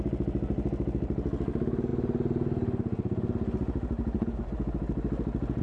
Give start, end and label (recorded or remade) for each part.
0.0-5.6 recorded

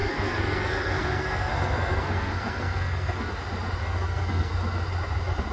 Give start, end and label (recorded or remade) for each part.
0.0-3.3 remade; 3.3-3.8 recorded; 3.8-4.5 remade; 4.5-5.5 recorded

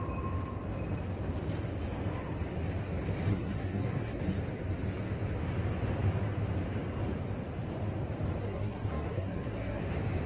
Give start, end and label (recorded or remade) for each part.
0.0-3.3 recorded; 3.3-4.2 remade; 4.2-8.4 recorded; 8.4-9.8 remade; 9.8-10.3 recorded

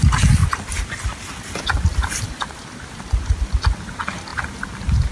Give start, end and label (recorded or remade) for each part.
0.0-0.4 remade; 0.4-1.6 recorded; 1.6-5.1 remade

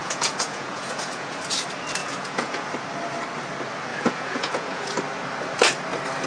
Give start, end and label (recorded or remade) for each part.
0.0-1.4 remade; 1.4-2.0 recorded; 2.0-2.7 remade; 2.7-3.9 recorded; 3.9-4.9 remade; 4.9-6.3 recorded

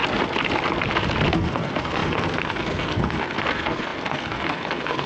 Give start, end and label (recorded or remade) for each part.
0.0-1.3 recorded; 1.3-5.1 remade

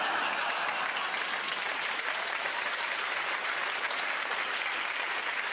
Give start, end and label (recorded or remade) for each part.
0.0-1.7 recorded; 1.7-4.2 remade; 4.2-5.5 recorded

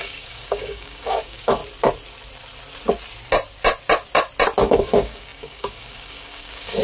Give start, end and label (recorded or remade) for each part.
0.0-1.6 remade; 1.6-4.6 recorded; 4.6-6.8 remade